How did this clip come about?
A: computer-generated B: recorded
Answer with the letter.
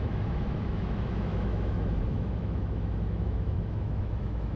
A